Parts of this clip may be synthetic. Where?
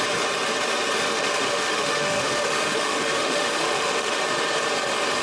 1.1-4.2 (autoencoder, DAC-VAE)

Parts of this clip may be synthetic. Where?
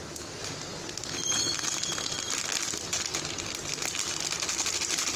none